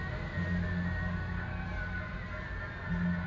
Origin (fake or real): real